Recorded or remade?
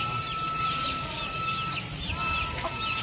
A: recorded